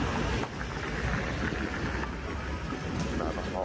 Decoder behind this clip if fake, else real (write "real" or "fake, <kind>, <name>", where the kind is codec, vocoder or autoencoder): real